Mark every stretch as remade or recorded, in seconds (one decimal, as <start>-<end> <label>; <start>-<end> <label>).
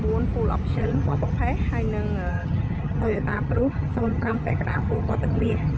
0.0-0.7 recorded; 0.7-1.4 remade; 1.4-2.3 recorded; 2.3-5.8 remade